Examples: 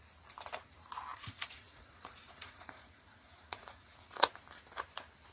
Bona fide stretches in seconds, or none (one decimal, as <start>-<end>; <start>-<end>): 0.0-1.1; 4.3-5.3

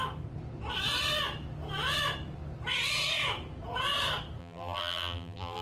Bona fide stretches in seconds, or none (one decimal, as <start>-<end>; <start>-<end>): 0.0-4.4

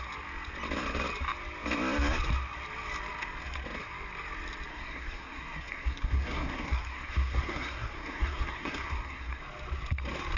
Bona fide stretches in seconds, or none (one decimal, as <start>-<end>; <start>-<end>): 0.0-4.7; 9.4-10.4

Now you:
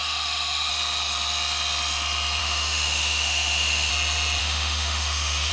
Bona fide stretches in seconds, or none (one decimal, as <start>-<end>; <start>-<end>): 0.7-2.4; 3.9-4.4